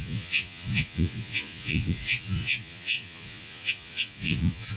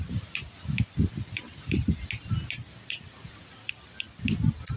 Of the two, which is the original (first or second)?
second